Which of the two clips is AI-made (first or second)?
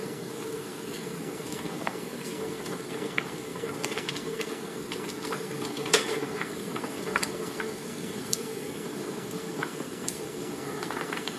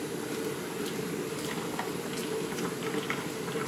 first